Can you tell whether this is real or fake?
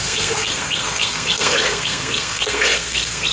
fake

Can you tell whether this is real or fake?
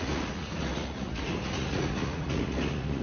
fake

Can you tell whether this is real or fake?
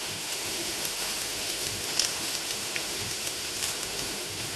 fake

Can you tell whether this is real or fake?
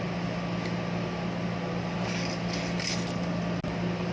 real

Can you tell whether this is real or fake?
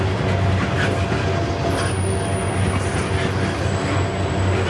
real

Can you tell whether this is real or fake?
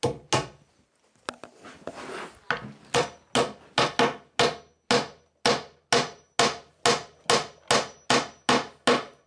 real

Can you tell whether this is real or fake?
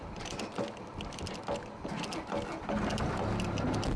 real